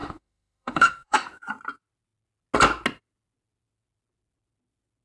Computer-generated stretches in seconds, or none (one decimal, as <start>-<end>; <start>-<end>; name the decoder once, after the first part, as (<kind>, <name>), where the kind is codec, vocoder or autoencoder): 0.0-1.4 (autoencoder, DAC-VAE)